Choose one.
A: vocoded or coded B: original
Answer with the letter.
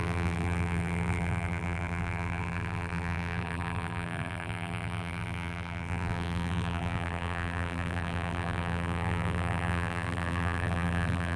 A